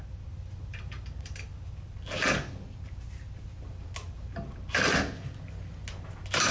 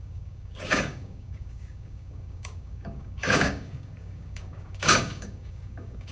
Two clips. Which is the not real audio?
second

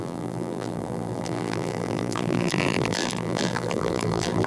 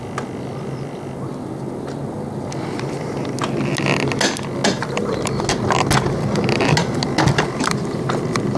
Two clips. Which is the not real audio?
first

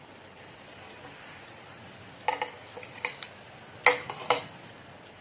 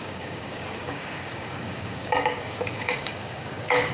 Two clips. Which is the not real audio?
second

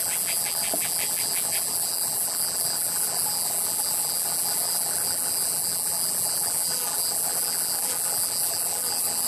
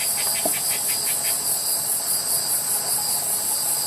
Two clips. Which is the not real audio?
first